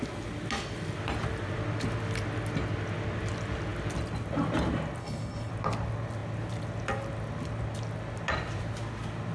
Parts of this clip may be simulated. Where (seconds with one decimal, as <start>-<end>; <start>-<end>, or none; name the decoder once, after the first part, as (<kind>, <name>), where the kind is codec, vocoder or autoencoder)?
5.0-5.5 (codec, HILCodec)

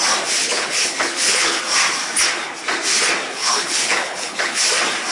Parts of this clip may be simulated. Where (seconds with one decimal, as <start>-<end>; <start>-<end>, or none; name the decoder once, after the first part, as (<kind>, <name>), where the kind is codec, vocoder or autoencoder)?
0.4-1.6 (codec, HILCodec); 3.3-4.6

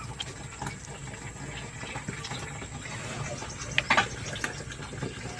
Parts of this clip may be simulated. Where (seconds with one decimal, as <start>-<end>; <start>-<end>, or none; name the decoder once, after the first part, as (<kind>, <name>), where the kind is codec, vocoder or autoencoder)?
none

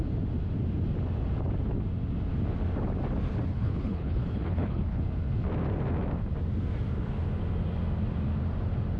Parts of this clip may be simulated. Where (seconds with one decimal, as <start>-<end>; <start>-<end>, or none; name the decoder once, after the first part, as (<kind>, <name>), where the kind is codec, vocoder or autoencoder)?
3.5-5.0 (codec, HILCodec)

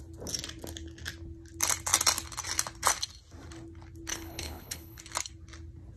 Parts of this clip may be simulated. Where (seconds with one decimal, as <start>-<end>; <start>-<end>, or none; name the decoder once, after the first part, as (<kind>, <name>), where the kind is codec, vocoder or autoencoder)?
4.1-5.0 (codec, HILCodec)

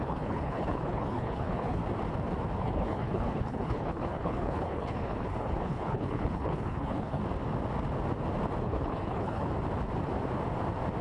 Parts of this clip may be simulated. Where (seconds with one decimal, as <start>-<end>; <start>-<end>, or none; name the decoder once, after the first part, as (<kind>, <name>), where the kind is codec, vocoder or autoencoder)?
0.0-1.8 (codec, HILCodec); 2.6-7.2; 8.6-9.5